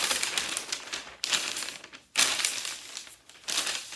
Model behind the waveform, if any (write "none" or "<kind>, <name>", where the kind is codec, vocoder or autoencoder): none